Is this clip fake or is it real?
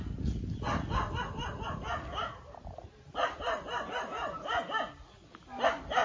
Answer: real